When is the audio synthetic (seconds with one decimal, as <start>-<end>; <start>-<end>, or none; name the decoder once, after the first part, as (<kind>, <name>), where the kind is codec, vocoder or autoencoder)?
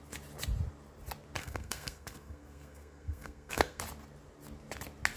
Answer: 1.4-3.8 (codec, SNAC)